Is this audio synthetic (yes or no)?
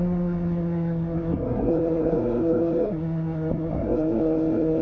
yes